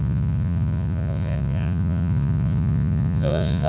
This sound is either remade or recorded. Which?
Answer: remade